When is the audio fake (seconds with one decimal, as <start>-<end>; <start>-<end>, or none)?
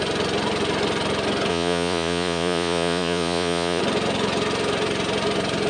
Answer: 1.5-3.8